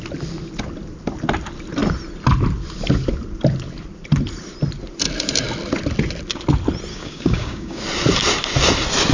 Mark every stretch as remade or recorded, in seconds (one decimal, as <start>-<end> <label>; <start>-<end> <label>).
0.0-6.9 recorded; 6.9-7.8 remade; 7.8-9.1 recorded